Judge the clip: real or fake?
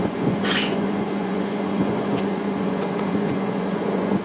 fake